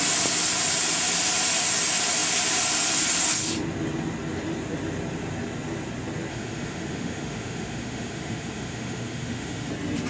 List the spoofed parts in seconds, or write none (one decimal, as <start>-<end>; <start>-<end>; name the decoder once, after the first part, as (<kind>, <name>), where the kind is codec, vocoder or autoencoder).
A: 6.3-9.7 (autoencoder, DAC-VAE)